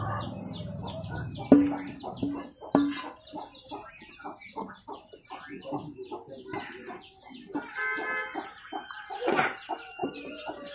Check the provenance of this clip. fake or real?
real